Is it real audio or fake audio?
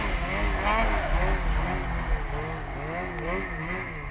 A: real